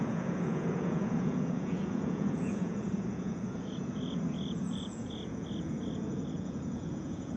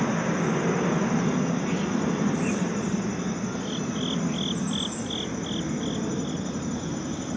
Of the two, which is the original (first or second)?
second